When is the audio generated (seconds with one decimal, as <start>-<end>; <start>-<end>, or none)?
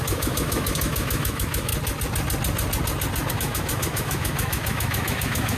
0.0-1.7; 3.3-5.6